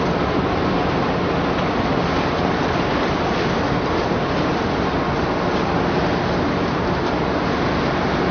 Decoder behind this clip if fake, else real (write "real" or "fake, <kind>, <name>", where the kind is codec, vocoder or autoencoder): real